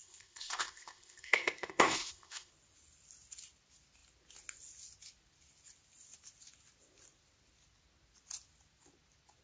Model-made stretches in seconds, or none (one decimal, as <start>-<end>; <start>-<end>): 0.0-2.5